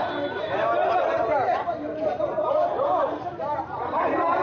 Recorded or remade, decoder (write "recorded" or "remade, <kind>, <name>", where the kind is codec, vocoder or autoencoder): remade, vocoder, BigVGAN v2